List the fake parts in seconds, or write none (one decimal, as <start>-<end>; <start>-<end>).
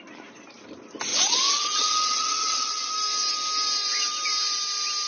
1.1-2.9